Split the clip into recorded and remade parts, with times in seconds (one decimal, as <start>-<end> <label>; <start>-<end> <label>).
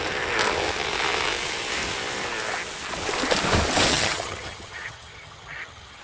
0.0-3.9 recorded; 3.9-6.0 remade